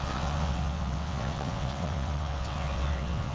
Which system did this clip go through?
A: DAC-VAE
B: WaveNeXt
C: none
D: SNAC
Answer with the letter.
B